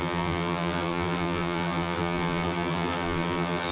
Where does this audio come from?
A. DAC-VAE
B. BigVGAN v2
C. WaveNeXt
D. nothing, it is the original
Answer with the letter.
B